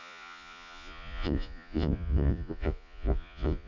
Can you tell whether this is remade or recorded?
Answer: remade